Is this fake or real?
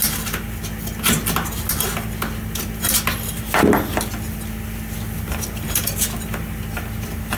real